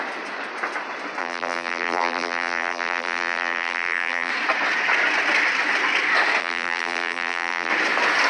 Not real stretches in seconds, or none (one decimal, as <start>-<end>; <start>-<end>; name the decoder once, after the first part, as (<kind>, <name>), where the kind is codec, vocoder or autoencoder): 1.2-4.3 (vocoder, BigVGAN v2); 6.4-7.7